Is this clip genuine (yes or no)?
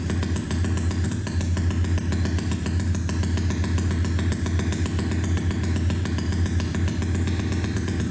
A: yes